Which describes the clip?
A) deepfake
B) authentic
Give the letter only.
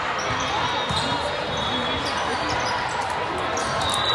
B